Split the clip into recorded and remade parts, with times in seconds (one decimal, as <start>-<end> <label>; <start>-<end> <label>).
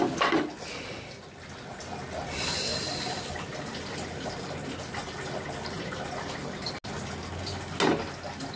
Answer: 0.0-8.6 recorded